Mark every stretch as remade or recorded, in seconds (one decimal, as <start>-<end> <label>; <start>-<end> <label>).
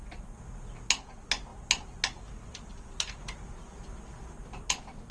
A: 0.0-5.1 recorded